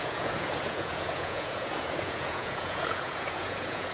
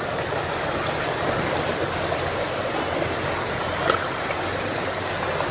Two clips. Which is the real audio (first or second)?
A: second